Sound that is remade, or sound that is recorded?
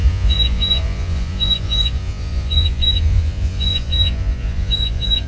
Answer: remade